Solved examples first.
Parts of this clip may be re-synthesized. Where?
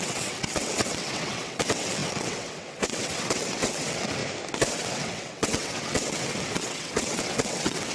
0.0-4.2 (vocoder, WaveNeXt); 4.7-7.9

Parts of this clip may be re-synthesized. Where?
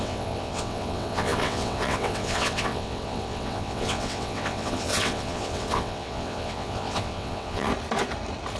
0.0-7.7 (vocoder, WaveNeXt)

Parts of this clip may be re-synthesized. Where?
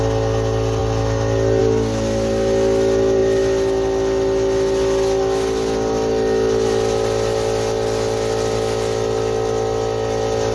none